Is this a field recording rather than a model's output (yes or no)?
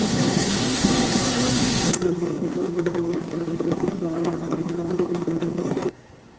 no